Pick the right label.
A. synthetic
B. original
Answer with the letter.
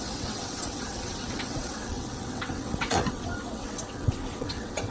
A